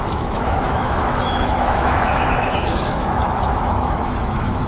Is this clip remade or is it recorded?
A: remade